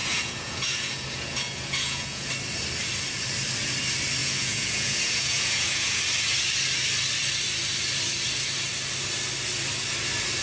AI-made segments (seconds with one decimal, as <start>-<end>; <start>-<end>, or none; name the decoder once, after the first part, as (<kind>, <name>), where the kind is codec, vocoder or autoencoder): 0.0-2.3 (vocoder, Vocos); 4.2-6.0